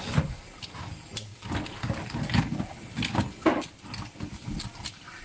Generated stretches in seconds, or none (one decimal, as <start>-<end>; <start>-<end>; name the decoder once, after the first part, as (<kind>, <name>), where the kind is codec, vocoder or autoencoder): none